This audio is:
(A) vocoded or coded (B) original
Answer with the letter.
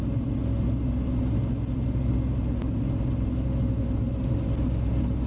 B